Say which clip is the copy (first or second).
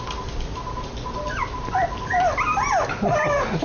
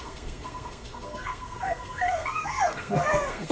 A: second